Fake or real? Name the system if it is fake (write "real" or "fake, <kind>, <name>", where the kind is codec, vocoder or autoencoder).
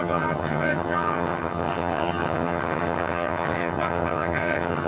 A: fake, vocoder, HiFi-GAN